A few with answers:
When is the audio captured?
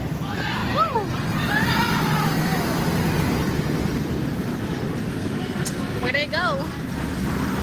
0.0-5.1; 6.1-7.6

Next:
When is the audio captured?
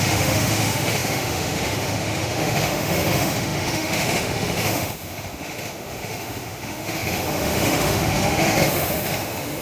none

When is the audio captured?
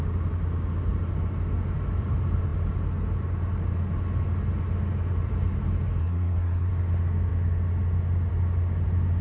0.0-6.0; 6.7-9.2